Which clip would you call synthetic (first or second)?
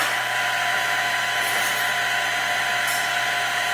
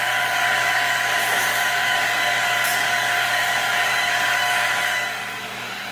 second